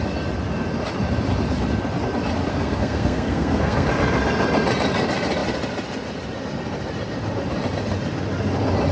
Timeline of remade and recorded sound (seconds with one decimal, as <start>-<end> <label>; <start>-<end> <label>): 0.0-2.5 recorded; 2.5-3.9 remade; 3.9-8.9 recorded